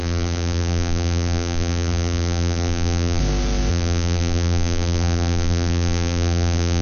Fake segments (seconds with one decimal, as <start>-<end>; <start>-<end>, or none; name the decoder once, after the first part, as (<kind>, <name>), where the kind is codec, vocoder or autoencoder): 0.0-3.2 (vocoder, BigVGAN v2); 3.7-6.8